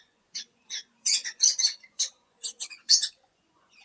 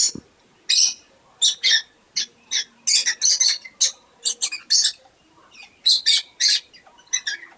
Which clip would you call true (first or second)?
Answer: second